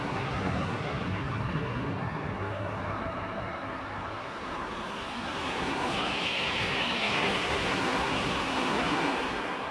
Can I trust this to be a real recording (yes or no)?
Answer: no